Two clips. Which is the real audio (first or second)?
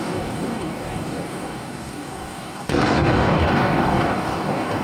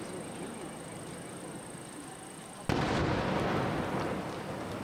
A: second